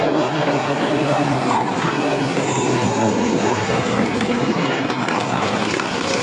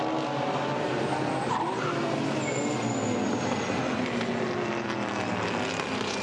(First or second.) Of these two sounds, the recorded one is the second